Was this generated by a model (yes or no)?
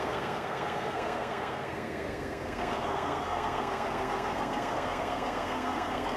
yes